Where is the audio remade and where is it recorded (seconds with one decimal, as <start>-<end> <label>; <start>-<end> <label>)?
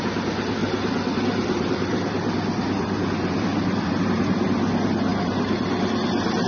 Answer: 0.0-0.6 recorded; 0.6-3.9 remade; 3.9-5.1 recorded; 5.1-5.6 remade; 5.6-6.5 recorded